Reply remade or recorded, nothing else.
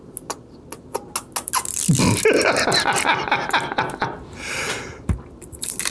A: recorded